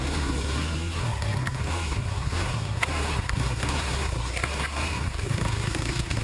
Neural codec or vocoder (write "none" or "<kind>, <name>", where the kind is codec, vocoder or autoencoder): codec, SNAC